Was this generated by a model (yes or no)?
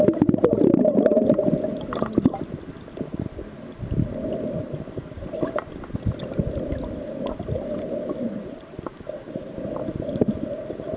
no